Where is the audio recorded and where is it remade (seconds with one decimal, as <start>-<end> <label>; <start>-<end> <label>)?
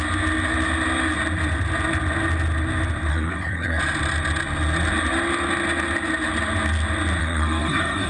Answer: 0.0-3.1 recorded; 3.1-3.8 remade; 3.8-7.2 recorded; 7.2-8.1 remade